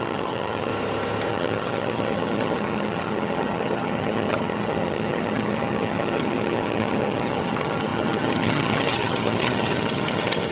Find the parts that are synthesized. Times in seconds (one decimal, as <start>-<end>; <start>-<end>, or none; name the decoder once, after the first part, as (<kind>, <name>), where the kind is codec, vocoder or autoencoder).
0.0-0.7 (vocoder, HiFi-GAN); 1.3-10.5